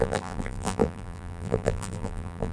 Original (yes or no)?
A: no